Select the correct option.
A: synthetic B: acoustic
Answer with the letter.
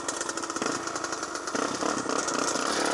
B